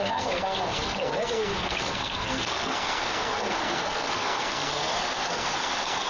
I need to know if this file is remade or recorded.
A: remade